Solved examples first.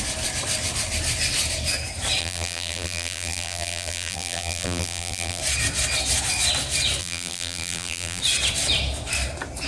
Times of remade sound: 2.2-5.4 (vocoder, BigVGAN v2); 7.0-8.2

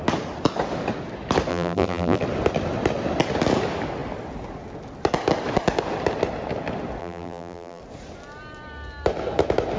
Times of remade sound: 1.5-2.2 (vocoder, BigVGAN v2); 7.0-7.8